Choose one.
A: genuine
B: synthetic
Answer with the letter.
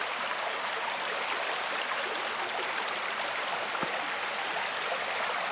A